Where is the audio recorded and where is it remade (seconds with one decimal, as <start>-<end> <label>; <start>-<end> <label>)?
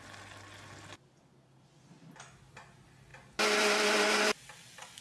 0.0-5.0 recorded